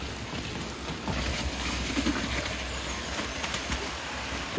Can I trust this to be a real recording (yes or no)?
yes